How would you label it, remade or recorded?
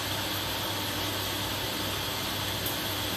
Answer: recorded